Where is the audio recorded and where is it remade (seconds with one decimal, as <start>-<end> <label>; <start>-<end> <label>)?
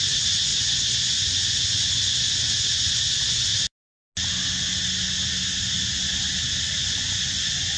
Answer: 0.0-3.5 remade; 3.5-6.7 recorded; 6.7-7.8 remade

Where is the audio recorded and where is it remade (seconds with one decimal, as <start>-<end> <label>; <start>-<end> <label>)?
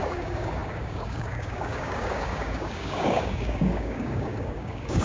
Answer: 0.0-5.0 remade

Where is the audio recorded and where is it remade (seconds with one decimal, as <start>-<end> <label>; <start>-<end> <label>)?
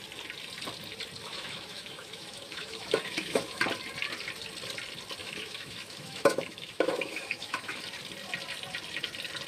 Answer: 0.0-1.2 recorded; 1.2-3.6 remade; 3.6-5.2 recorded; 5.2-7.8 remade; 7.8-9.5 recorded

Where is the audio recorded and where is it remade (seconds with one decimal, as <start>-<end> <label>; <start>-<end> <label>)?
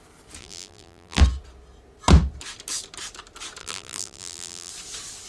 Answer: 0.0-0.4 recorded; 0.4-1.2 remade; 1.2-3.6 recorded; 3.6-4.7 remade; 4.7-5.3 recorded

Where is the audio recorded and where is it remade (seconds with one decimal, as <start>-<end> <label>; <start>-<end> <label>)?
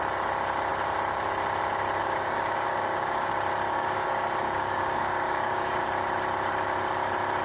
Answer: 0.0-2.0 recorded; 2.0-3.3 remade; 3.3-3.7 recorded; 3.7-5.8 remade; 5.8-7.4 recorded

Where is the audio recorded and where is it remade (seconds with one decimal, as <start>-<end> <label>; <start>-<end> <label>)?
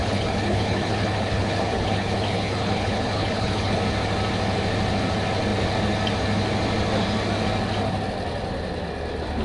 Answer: 0.0-3.8 remade; 3.8-9.4 recorded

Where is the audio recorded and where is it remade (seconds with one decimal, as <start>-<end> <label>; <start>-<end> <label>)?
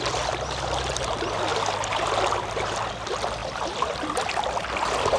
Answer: 0.0-5.2 recorded